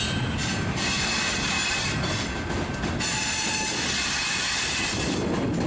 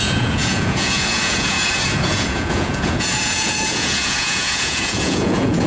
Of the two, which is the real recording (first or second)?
first